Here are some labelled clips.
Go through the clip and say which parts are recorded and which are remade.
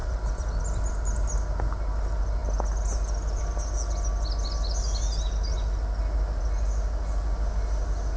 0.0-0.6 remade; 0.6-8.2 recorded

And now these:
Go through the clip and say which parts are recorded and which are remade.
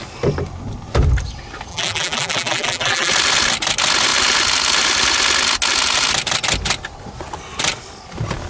0.0-1.7 recorded; 1.7-3.1 remade; 3.1-8.5 recorded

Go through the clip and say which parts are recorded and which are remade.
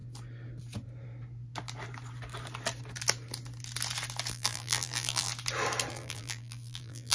0.0-4.3 recorded; 4.3-5.3 remade; 5.3-5.9 recorded; 5.9-7.1 remade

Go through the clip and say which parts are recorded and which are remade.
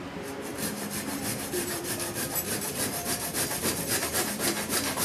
0.0-5.0 remade